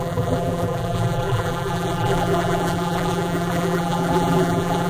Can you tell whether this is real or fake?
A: fake